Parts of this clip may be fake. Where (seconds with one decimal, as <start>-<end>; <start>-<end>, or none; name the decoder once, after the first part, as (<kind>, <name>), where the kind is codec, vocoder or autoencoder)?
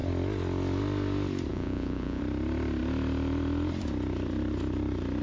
1.5-2.2 (vocoder, Vocos)